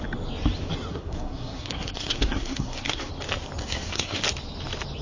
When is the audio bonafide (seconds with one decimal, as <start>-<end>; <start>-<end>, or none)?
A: 0.0-0.9; 3.1-3.6; 4.2-5.0